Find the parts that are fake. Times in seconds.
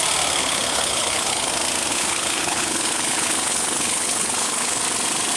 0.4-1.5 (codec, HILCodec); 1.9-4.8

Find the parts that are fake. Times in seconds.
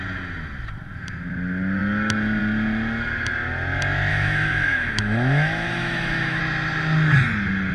4.1-6.4 (autoencoder, DAC-VAE)